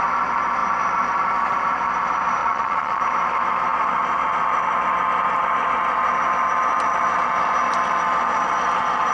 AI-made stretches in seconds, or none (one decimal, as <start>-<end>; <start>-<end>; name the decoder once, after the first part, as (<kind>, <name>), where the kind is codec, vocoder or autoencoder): 2.4-3.0 (vocoder, Vocos)